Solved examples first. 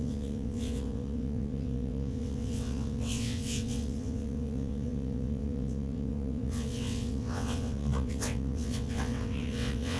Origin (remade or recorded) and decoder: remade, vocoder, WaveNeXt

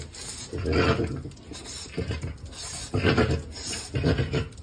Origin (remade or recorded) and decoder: recorded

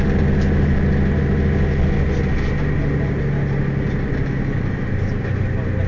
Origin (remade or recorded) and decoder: recorded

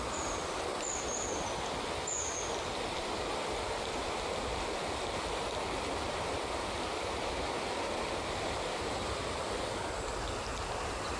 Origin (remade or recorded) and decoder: recorded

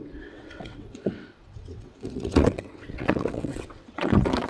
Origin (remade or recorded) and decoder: remade, vocoder, WaveNeXt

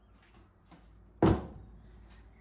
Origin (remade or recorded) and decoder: recorded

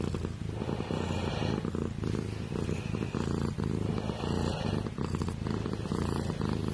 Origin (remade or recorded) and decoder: recorded